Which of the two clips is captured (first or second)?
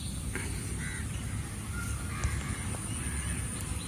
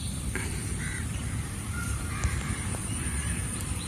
first